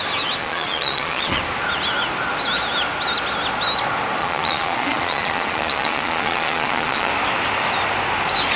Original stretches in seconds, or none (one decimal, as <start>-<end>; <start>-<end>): 0.0-0.4; 1.4-4.2; 7.1-8.6